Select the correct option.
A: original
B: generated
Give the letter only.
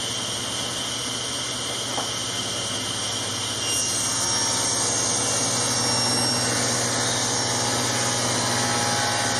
A